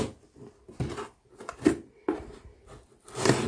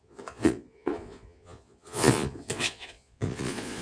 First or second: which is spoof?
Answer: second